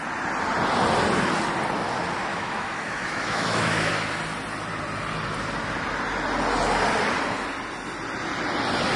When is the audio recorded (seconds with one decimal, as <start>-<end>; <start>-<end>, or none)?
0.0-2.3; 3.9-9.0